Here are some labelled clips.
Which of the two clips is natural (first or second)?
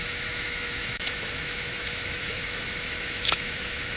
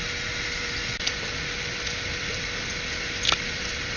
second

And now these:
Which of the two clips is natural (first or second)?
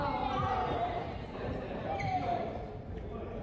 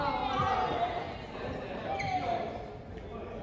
second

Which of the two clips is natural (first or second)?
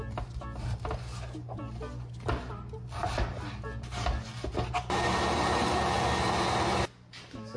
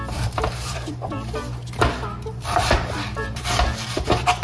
first